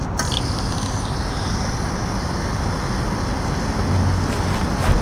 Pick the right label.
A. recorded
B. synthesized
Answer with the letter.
A